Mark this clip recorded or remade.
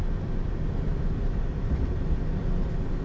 recorded